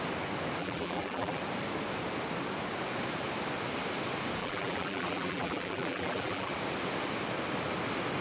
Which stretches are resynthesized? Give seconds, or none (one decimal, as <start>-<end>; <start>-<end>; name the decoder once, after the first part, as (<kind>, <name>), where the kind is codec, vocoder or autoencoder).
0.6-1.4 (vocoder, BigVGAN v2); 4.4-6.5